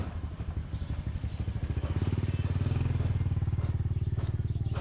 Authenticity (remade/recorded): recorded